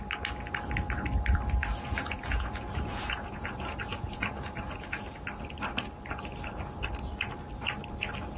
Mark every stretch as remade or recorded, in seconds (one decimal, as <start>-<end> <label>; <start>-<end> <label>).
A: 0.0-1.6 recorded; 1.6-5.2 remade; 5.2-8.4 recorded